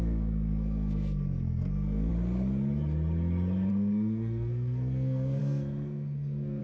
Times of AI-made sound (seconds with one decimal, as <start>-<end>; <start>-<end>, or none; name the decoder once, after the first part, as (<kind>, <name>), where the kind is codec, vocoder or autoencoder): 0.0-2.1 (codec, SNAC); 3.7-6.6